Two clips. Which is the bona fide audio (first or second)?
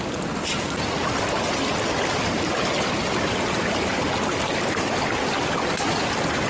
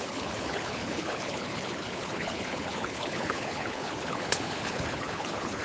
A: first